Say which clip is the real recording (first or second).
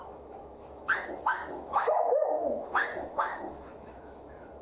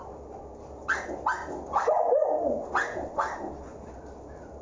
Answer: second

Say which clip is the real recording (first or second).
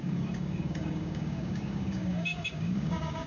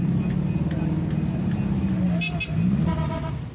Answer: second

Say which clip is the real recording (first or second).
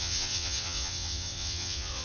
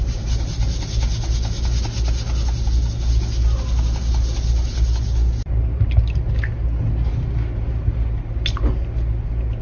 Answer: second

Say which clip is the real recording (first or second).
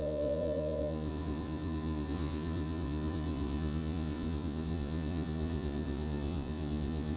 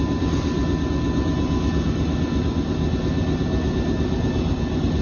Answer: second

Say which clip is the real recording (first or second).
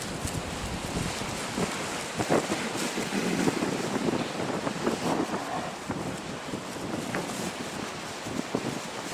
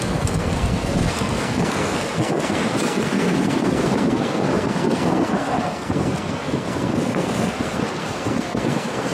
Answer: first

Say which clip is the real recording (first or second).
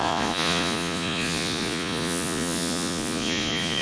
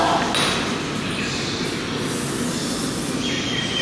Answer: second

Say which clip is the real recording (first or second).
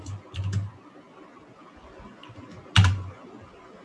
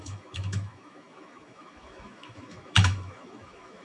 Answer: first